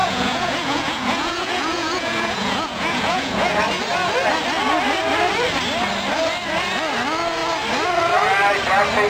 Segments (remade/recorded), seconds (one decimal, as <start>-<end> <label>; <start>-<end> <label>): 0.0-3.6 remade; 3.6-9.1 recorded